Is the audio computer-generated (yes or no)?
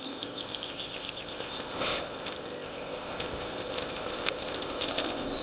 yes